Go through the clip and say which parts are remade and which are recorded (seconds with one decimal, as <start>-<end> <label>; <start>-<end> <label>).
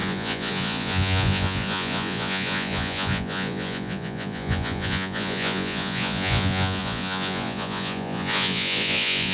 0.0-9.3 remade